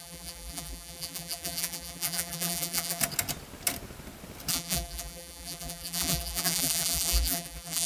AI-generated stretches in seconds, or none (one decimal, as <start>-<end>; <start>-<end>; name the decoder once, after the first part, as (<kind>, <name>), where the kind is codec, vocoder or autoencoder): 0.0-3.0 (vocoder, BigVGAN v2); 4.5-7.9